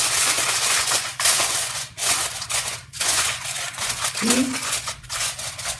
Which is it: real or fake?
fake